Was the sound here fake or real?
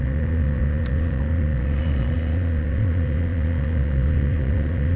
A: fake